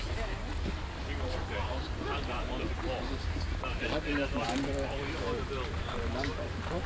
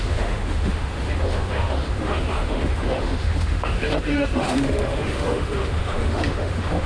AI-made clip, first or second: second